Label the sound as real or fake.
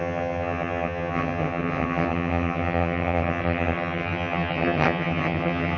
fake